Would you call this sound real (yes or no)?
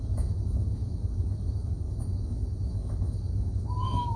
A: no